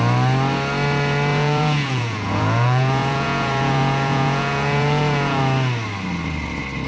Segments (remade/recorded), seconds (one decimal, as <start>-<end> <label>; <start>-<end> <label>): 0.0-1.3 recorded; 1.3-5.4 remade; 5.4-6.9 recorded